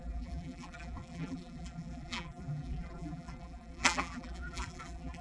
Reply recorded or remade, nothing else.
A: remade